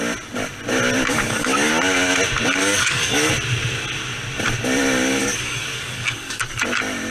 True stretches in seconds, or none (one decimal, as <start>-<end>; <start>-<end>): 0.0-1.1; 1.7-2.6; 3.3-5.2; 6.6-7.1